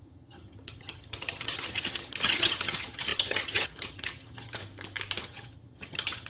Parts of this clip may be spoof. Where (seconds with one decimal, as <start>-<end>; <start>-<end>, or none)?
0.0-4.6; 5.2-6.3